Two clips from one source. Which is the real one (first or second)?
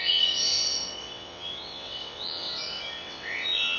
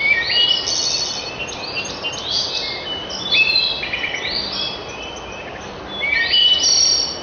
second